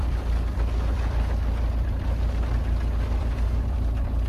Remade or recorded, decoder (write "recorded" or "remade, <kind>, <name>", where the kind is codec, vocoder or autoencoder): remade, vocoder, BigVGAN v2